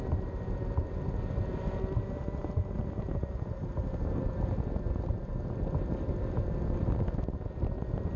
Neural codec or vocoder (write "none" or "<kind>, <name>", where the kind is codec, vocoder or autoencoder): none